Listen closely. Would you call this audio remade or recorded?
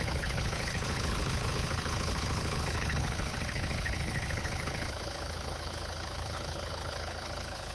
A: remade